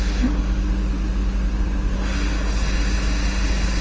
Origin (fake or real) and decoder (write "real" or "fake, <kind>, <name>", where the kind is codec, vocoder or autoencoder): real